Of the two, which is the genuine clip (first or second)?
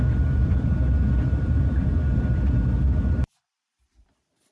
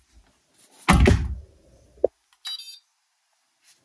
second